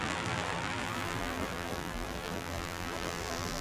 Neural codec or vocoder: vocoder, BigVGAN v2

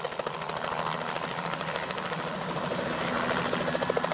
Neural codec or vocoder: none